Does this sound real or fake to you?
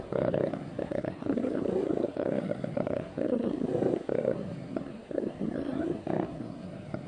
fake